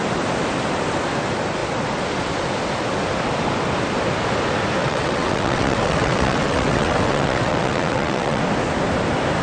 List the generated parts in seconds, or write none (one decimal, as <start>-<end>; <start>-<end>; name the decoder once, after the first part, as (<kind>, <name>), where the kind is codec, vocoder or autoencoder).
4.8-8.4 (vocoder, WaveNeXt)